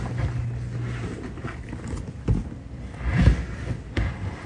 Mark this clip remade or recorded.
recorded